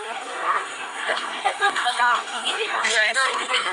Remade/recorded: remade